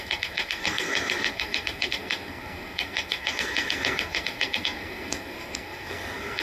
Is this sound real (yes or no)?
no